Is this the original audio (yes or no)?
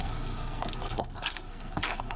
no